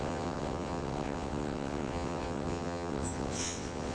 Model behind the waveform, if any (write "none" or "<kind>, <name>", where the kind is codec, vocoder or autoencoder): vocoder, WaveNeXt